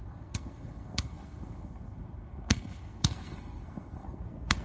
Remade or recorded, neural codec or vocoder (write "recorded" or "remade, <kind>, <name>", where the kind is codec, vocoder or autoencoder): remade, codec, SNAC